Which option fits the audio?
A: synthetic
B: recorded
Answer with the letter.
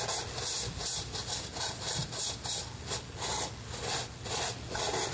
B